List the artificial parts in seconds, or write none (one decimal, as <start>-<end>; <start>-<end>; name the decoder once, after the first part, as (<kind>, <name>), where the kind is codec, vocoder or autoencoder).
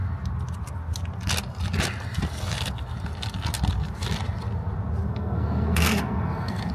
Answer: 5.0-6.7 (codec, SNAC)